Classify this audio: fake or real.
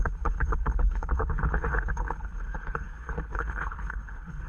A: fake